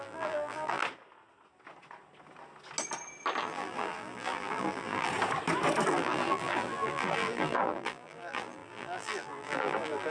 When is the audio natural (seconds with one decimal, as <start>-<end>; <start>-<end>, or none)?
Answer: 0.8-3.4; 5.1-5.9